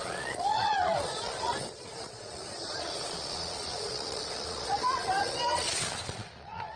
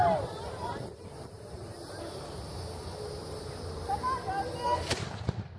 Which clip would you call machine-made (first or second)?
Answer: first